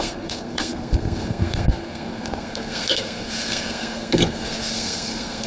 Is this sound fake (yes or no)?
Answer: yes